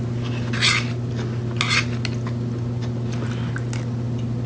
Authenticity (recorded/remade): recorded